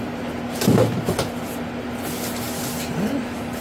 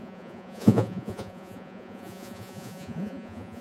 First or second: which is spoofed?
second